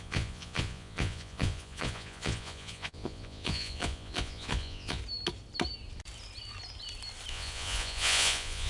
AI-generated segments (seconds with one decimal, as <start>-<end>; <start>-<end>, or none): 0.0-5.0; 7.3-8.7